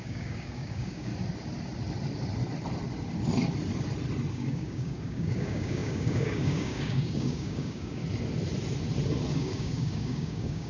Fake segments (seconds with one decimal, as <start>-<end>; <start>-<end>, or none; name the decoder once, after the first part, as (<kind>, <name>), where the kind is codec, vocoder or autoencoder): 0.0-1.1 (codec, DAC); 4.3-8.0; 9.3-10.7